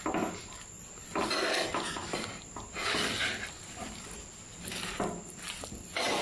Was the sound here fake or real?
real